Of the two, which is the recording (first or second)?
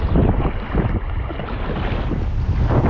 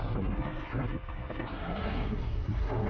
first